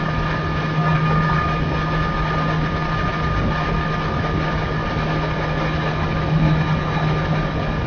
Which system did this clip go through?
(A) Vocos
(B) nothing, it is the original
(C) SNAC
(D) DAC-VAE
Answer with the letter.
B